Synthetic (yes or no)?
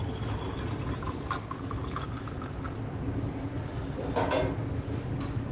no